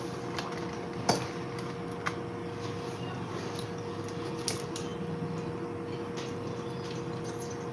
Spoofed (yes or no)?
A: no